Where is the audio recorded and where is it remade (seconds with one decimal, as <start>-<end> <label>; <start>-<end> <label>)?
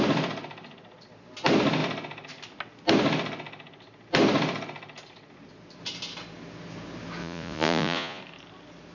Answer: 0.0-7.2 recorded; 7.2-8.2 remade; 8.2-8.9 recorded